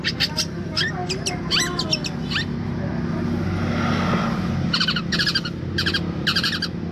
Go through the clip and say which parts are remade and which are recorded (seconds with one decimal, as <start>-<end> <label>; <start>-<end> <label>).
0.0-6.9 recorded